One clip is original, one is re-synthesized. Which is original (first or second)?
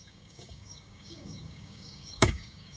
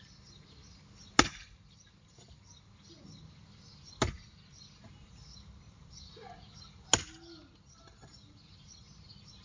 second